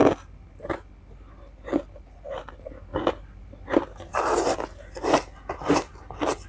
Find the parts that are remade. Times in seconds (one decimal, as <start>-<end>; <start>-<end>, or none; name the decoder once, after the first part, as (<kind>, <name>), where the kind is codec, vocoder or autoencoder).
0.0-2.5 (vocoder, BigVGAN v2); 2.9-3.5; 4.1-6.0